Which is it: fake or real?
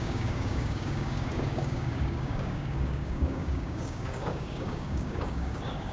fake